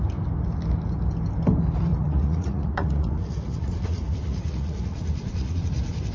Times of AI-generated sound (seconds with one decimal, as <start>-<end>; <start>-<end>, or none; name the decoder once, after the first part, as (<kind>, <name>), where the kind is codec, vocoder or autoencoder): 1.9-5.6 (vocoder, Vocos)